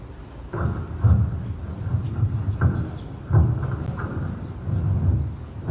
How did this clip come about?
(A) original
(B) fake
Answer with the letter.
A